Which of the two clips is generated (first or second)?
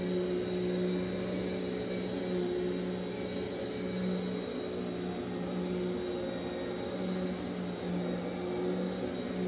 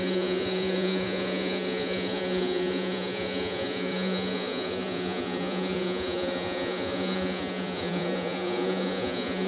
second